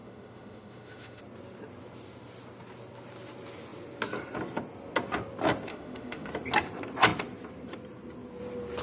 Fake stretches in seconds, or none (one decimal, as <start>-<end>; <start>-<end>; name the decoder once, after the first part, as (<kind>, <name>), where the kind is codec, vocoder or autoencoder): 0.0-1.2 (autoencoder, DAC-VAE); 5.7-6.3